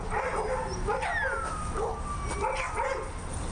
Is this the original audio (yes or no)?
yes